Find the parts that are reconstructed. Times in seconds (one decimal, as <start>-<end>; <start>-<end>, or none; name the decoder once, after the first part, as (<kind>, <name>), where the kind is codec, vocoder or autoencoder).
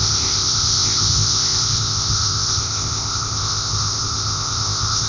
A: 0.0-5.1 (codec, ZipCodec)